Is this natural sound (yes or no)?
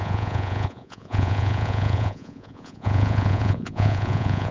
no